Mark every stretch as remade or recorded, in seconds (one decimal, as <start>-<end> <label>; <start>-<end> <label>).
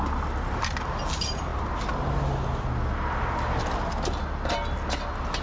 0.0-5.4 recorded